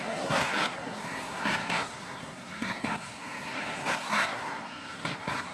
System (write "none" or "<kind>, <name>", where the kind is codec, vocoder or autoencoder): codec, SNAC